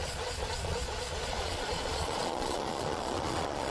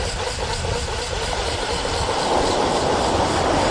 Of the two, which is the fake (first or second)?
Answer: first